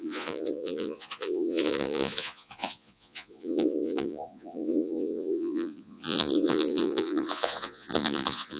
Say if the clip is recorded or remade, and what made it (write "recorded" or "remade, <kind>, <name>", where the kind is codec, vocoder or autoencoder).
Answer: remade, vocoder, Vocos